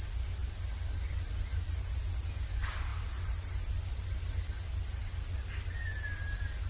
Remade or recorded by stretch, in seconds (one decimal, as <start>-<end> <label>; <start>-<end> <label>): 0.0-6.7 recorded